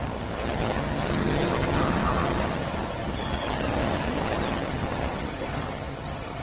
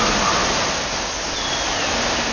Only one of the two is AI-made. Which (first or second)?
first